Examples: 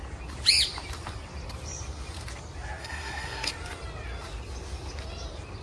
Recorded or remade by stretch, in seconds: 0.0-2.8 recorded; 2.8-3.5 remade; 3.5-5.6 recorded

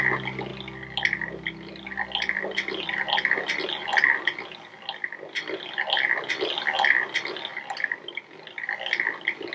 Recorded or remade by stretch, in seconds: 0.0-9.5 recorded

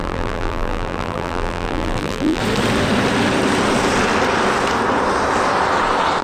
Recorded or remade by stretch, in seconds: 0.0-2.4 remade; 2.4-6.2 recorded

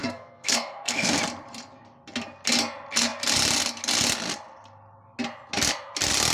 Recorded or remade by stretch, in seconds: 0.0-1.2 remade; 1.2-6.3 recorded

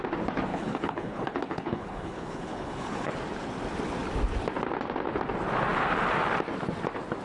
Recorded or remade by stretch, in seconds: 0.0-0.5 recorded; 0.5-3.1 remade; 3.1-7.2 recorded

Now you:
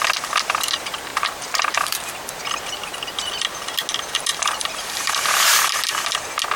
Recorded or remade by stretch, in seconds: 0.0-1.1 recorded; 1.1-2.4 remade; 2.4-4.3 recorded; 4.3-5.8 remade; 5.8-6.6 recorded

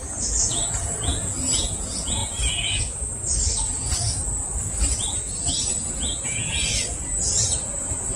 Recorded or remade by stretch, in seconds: 0.0-8.2 remade

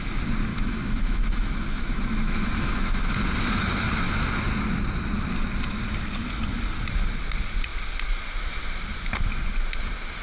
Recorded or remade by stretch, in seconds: 0.0-0.5 recorded; 0.5-3.1 remade; 3.1-10.2 recorded